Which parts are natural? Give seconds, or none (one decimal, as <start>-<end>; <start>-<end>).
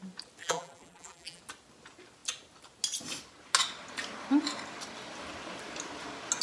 0.0-0.4; 1.4-6.4